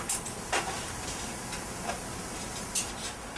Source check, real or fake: real